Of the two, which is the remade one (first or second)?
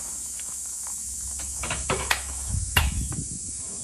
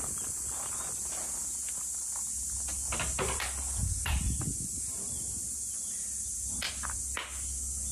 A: first